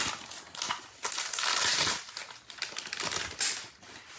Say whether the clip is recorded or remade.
recorded